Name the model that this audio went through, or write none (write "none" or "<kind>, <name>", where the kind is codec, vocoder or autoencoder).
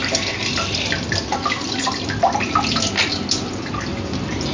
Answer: none